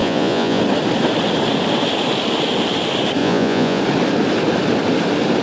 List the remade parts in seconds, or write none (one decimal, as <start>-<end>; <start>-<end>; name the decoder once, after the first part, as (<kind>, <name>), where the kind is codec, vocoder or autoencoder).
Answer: 0.0-0.6 (vocoder, Vocos); 3.2-3.8